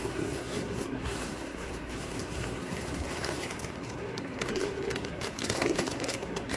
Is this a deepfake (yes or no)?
yes